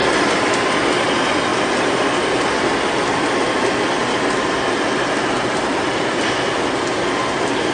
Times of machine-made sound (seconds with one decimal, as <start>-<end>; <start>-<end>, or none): none

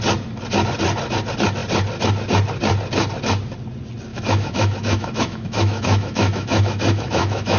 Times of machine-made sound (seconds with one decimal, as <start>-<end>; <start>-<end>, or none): 4.1-7.6

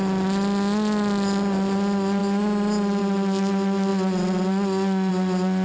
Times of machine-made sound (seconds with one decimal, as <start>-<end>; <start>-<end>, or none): none